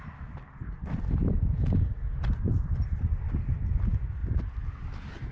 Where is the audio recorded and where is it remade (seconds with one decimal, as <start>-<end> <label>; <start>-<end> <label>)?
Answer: 0.0-4.2 remade; 4.2-5.3 recorded